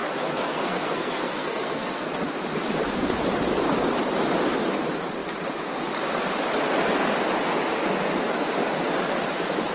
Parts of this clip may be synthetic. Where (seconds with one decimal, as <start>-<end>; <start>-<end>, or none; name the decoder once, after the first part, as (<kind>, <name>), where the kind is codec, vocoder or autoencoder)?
0.0-2.1 (codec, SNAC)